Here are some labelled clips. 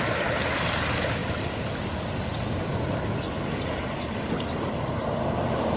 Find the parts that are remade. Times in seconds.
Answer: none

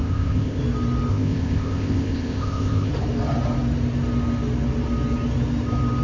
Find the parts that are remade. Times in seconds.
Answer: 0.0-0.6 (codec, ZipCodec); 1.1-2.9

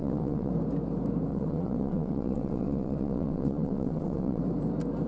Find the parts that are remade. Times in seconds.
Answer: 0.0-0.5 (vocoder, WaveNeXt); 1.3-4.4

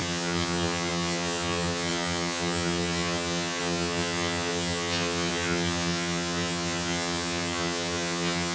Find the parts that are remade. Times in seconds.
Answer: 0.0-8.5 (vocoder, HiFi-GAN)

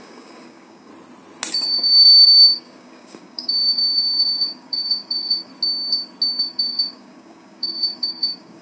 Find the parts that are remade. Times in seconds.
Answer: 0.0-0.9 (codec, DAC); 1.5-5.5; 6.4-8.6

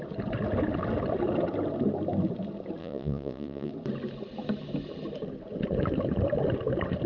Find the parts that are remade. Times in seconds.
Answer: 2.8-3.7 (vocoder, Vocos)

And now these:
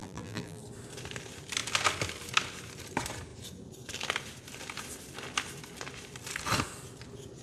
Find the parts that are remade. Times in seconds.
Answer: 0.0-0.6 (vocoder, BigVGAN v2)